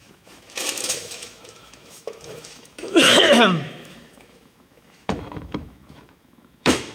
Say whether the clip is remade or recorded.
remade